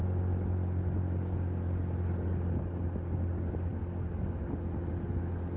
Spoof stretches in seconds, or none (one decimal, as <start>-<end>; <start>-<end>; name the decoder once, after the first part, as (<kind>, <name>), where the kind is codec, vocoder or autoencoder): none